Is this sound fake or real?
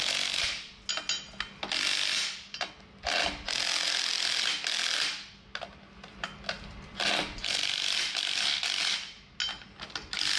real